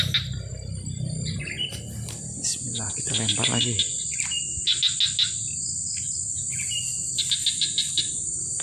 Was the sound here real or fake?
real